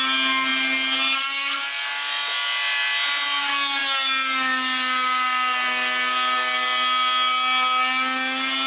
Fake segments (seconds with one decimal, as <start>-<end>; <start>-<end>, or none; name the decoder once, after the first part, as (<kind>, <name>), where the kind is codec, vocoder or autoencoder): none